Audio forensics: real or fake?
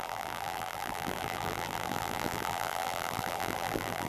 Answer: fake